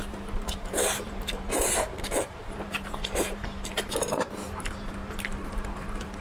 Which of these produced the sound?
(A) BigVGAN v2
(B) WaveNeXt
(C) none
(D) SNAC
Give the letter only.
A